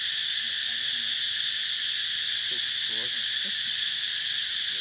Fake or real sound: real